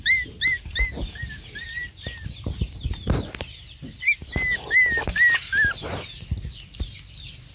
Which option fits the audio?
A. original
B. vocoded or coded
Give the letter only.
A